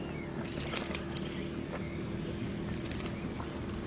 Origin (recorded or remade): recorded